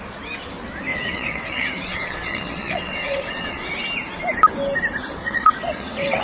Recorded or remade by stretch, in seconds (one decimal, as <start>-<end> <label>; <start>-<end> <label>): 0.0-0.9 recorded; 0.9-3.7 remade; 3.7-5.2 recorded; 5.2-6.2 remade